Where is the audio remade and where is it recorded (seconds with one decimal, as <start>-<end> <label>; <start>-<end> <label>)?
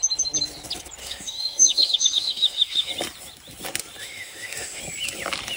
0.0-1.0 recorded; 1.0-2.9 remade; 2.9-4.0 recorded; 4.0-4.8 remade; 4.8-5.6 recorded